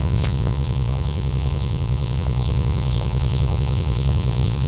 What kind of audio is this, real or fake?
fake